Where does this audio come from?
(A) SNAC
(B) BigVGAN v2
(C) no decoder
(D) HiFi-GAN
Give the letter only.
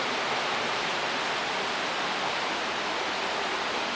C